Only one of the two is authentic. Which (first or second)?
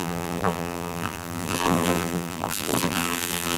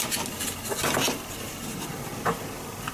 second